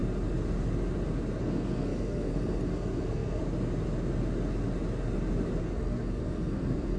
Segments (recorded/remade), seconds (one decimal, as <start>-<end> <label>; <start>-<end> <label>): 0.0-1.4 recorded; 1.4-3.4 remade; 3.4-5.6 recorded; 5.6-7.0 remade